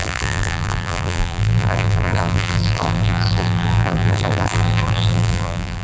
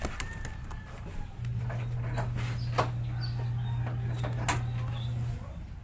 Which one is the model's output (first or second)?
first